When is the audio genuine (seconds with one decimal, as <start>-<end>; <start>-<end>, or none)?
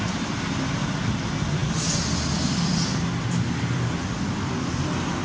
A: 0.0-5.2